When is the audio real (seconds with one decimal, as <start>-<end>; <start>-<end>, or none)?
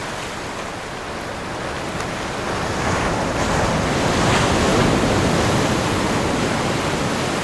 0.0-7.4